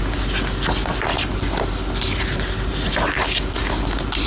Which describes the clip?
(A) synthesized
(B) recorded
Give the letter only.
B